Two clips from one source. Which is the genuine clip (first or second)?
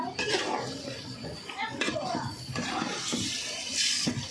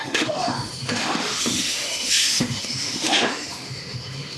first